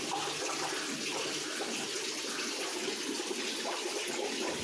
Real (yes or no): yes